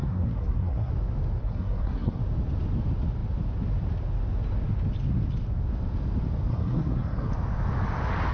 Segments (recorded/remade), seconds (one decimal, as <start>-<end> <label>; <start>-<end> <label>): 0.0-0.9 remade; 0.9-1.4 recorded; 1.4-2.2 remade; 2.2-6.5 recorded; 6.5-7.3 remade; 7.3-8.3 recorded